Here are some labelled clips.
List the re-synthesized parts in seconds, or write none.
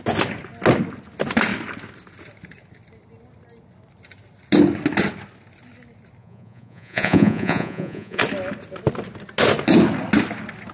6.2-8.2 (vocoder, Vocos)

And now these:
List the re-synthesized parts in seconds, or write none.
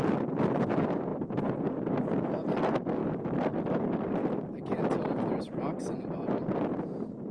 none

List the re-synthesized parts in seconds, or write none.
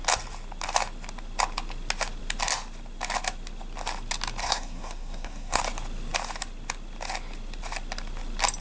4.4-5.6 (codec, SNAC)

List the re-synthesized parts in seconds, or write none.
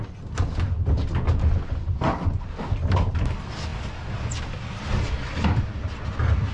none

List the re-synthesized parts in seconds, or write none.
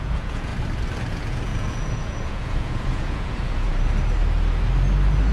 0.0-0.5 (vocoder, Vocos); 1.1-3.7